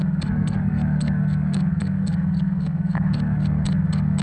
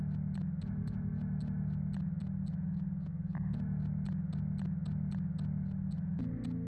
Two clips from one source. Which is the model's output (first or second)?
first